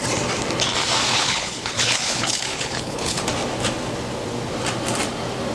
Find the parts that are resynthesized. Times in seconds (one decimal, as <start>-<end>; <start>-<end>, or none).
1.1-3.2